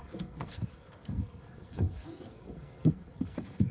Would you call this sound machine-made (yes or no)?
yes